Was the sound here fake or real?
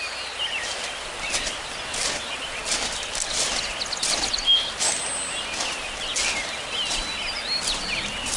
real